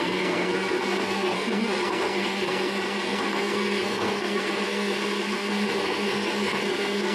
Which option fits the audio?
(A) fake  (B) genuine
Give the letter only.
A